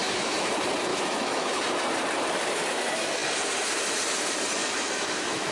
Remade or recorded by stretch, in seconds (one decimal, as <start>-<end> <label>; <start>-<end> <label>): 0.0-0.5 remade; 0.5-0.9 recorded; 0.9-1.6 remade; 1.6-4.6 recorded; 4.6-5.5 remade